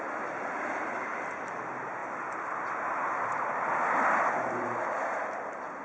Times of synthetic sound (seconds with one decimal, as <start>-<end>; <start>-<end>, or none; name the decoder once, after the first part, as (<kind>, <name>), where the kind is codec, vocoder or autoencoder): none